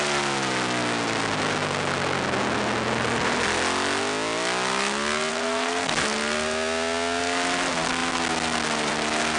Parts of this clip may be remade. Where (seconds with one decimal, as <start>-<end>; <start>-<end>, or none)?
5.3-5.9